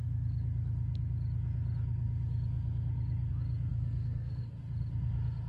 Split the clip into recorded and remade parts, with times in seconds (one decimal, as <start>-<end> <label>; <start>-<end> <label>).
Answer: 0.0-3.7 recorded; 3.7-4.5 remade; 4.5-5.5 recorded